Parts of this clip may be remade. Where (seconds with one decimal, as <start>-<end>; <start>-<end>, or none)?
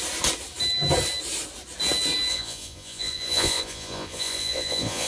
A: 2.3-5.1